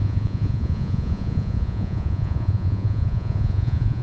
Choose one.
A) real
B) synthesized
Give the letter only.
B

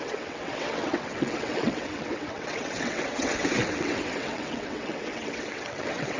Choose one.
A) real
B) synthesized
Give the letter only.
B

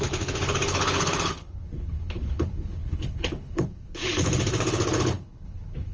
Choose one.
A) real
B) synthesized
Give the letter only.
B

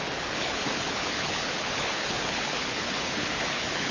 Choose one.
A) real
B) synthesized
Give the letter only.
B